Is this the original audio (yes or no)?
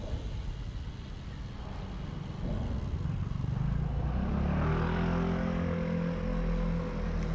yes